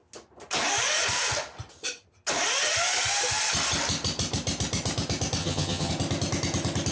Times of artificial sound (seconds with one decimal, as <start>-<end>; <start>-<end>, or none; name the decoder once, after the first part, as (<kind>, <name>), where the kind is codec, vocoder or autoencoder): 5.4-5.9 (vocoder, HiFi-GAN)